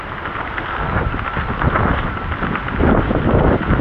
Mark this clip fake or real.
real